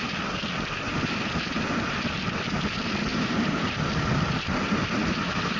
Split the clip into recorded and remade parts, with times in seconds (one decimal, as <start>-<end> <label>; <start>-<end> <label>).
0.0-3.1 recorded; 3.1-4.7 remade; 4.7-5.6 recorded